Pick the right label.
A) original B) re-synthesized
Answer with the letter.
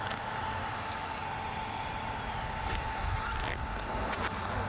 A